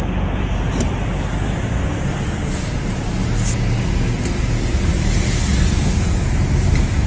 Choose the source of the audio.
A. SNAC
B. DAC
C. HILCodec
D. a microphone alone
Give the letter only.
D